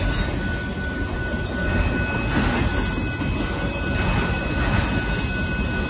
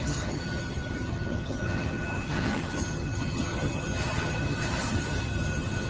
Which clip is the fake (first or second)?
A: second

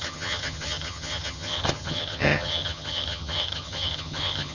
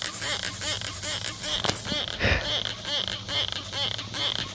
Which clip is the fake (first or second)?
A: first